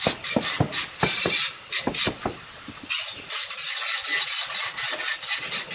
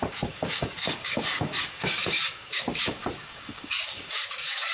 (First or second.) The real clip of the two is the first